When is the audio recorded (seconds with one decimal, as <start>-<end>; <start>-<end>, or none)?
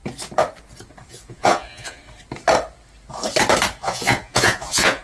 0.0-1.1; 2.0-3.8